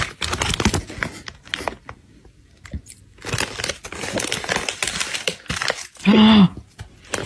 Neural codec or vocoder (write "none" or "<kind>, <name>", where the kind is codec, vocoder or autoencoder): none